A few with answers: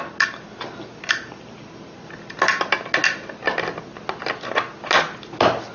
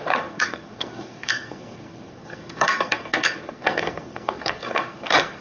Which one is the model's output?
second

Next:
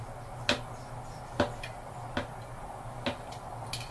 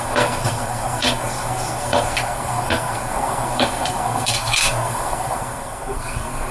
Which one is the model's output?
second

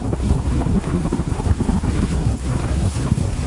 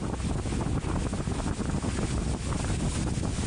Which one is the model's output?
first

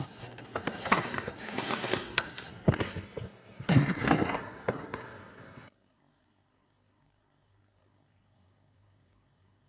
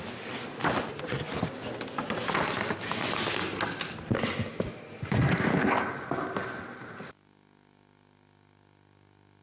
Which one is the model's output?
first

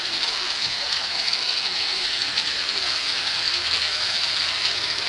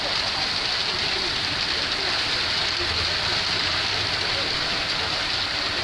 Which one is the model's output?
first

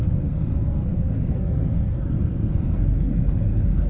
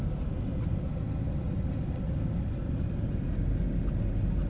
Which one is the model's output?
first